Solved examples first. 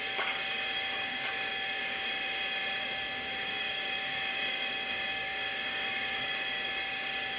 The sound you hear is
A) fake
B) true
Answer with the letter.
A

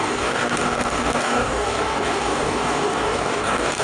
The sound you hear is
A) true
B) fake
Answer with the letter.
B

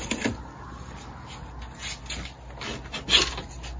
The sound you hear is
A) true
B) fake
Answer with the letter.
A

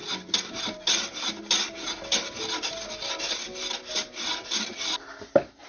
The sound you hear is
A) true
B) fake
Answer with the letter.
A